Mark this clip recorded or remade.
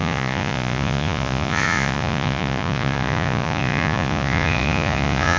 remade